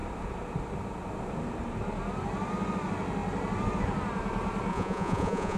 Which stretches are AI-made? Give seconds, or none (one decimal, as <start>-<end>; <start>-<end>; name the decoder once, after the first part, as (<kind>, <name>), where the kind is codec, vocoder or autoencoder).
4.7-5.6 (vocoder, Vocos)